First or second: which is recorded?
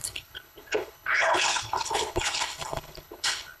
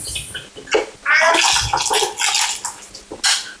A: second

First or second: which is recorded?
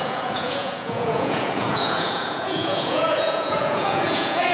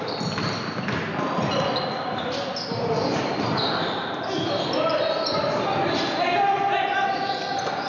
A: second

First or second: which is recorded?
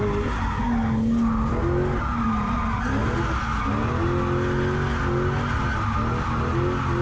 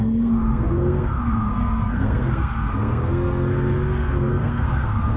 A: first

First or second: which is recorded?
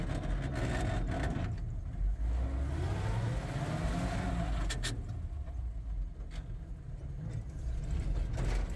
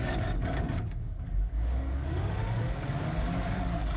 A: first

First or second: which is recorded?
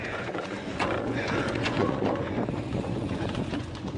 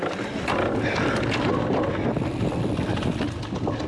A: second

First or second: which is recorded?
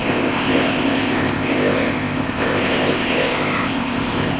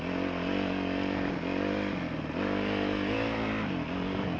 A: second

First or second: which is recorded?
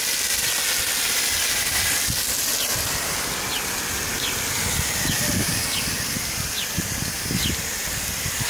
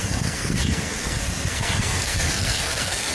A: first